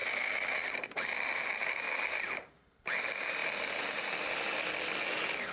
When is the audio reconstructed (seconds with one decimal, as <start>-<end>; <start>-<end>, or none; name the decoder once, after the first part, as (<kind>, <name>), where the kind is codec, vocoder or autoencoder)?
none